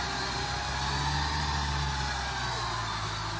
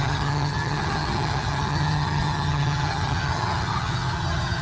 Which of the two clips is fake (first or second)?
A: second